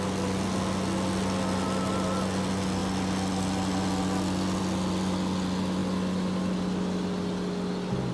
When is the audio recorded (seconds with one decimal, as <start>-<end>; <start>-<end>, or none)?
0.0-8.1